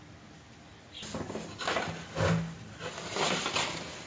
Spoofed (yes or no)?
no